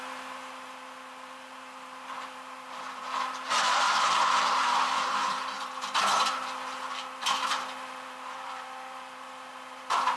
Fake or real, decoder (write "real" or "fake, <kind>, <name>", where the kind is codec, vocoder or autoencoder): fake, vocoder, BigVGAN v2